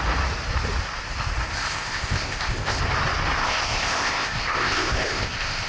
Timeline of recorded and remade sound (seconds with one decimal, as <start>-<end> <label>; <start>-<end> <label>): 0.0-1.5 recorded; 1.5-2.8 remade; 2.8-3.4 recorded; 3.4-5.7 remade